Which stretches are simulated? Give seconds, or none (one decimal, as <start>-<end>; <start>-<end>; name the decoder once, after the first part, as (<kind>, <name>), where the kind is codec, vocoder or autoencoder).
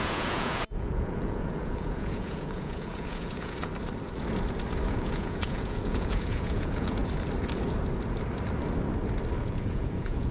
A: 0.0-3.7 (vocoder, Vocos); 4.9-7.0; 9.4-10.3